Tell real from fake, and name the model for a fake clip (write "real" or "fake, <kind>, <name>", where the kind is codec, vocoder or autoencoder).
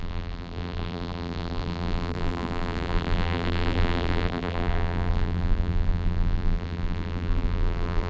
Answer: fake, vocoder, BigVGAN v2